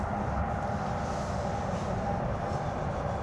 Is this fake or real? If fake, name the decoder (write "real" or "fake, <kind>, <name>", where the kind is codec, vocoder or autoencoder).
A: real